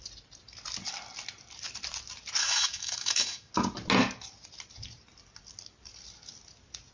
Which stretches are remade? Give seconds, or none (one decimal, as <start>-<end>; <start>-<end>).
2.4-3.5